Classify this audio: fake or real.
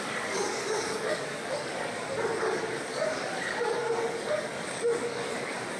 fake